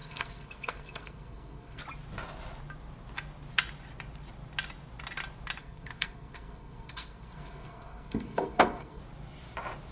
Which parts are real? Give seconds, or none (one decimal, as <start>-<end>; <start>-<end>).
1.8-5.6; 9.0-9.9